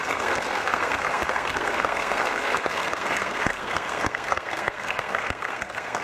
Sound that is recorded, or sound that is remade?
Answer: remade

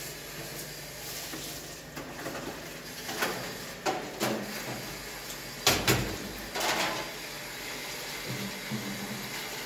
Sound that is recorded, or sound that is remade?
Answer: recorded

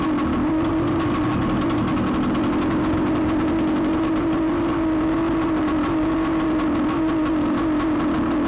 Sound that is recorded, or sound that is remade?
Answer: recorded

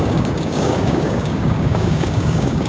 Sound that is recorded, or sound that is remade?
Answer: remade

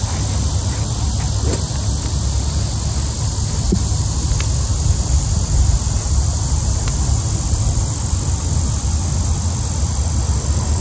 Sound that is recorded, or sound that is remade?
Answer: recorded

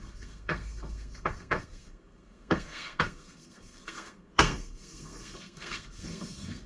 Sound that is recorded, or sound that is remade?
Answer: remade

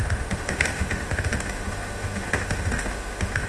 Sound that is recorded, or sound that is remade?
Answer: remade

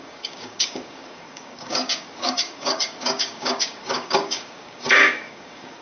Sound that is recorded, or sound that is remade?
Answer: remade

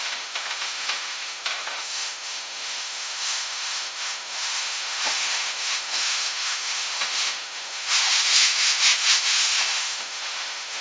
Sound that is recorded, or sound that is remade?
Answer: remade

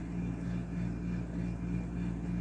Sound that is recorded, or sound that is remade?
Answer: recorded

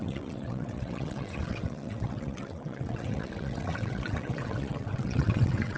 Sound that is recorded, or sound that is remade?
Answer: remade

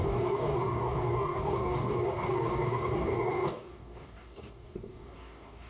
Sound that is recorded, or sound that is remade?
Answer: remade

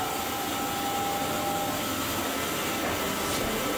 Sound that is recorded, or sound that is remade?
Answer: recorded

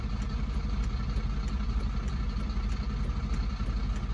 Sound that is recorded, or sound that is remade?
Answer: recorded